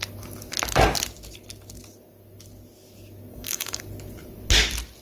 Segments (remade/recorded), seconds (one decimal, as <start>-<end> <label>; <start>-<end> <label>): 0.0-3.3 recorded; 3.3-3.8 remade; 3.8-5.0 recorded